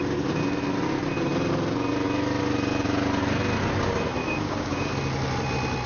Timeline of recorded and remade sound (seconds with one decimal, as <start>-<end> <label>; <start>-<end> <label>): 0.0-4.2 recorded; 4.2-4.9 remade; 4.9-5.9 recorded